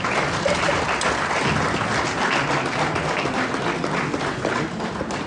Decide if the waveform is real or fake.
real